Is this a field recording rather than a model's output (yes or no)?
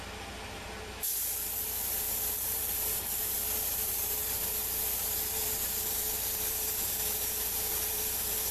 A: no